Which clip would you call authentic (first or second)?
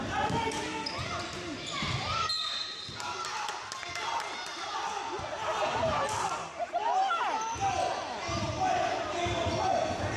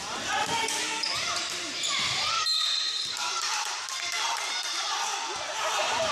first